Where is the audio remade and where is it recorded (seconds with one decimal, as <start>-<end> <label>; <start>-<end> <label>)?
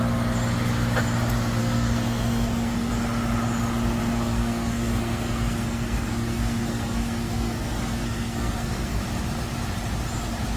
0.0-1.6 recorded; 1.6-2.9 remade; 2.9-4.0 recorded; 4.0-9.0 remade; 9.0-10.6 recorded